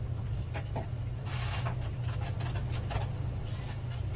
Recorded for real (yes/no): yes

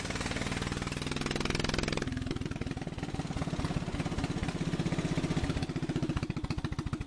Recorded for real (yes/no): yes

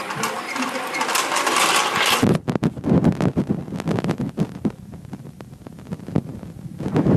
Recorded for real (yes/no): yes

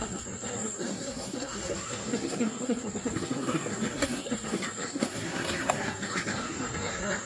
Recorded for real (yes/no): no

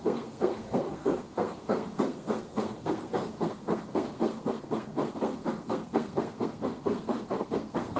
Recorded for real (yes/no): no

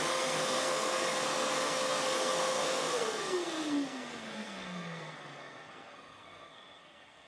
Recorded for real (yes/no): no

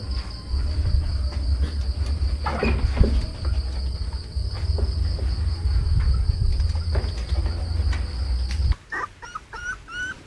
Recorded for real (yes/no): yes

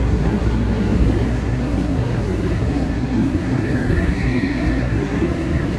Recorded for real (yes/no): no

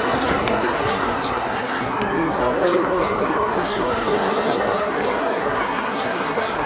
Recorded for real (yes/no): no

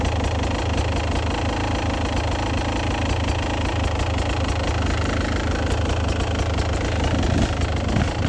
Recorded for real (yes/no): yes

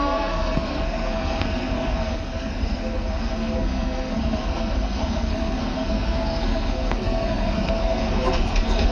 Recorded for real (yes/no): no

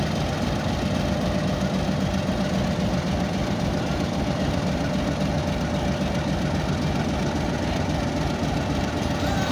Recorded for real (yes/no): yes